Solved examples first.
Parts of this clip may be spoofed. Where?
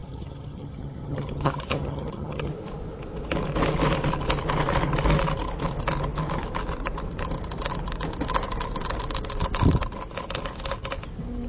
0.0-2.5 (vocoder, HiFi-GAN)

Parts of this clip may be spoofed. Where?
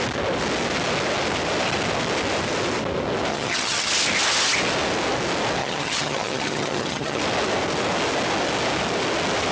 3.3-3.9 (vocoder, HiFi-GAN); 5.6-7.2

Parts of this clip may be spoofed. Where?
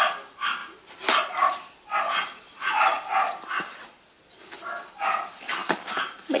none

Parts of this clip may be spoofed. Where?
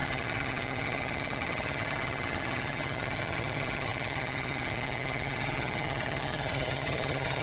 0.0-7.4 (vocoder, HiFi-GAN)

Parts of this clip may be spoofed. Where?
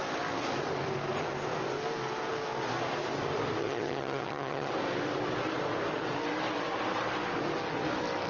3.6-4.7 (vocoder, HiFi-GAN)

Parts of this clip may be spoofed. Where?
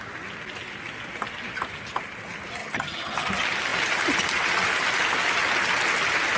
2.6-3.3 (vocoder, HiFi-GAN)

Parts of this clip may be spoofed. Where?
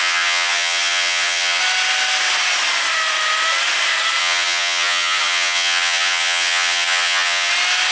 0.0-1.6 (vocoder, HiFi-GAN); 4.2-7.5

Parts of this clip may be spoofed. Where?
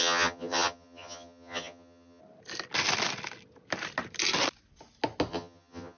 0.0-2.2 (vocoder, HiFi-GAN); 5.3-6.0